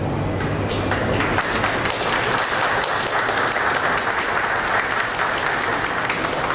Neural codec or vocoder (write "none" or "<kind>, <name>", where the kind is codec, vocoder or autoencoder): none